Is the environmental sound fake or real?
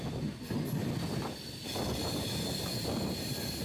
real